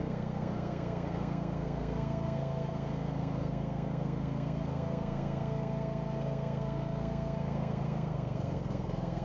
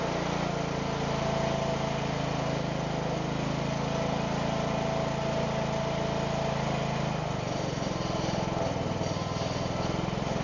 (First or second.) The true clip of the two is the second